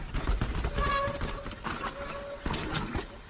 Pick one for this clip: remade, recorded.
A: recorded